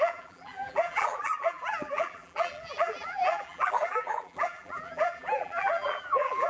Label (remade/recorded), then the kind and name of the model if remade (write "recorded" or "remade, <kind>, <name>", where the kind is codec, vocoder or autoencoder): remade, vocoder, BigVGAN v2